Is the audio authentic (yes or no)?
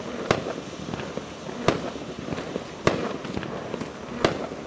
yes